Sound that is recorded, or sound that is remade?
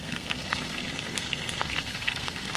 remade